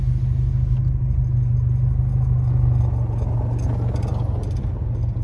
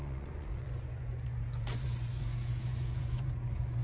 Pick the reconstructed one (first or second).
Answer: second